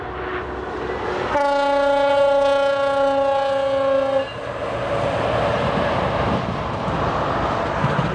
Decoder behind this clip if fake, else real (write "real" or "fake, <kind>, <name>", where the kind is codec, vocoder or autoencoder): real